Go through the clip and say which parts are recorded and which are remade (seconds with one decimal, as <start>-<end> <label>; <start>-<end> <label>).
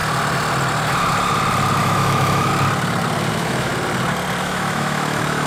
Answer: 0.0-1.8 recorded; 1.8-2.5 remade; 2.5-3.3 recorded; 3.3-3.7 remade; 3.7-4.4 recorded; 4.4-5.5 remade